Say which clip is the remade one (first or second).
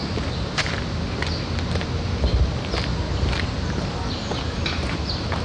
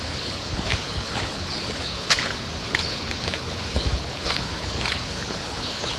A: second